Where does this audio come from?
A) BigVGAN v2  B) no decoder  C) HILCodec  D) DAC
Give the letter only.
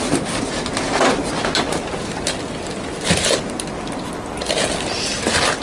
B